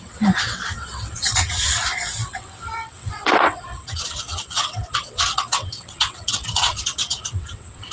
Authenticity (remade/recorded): remade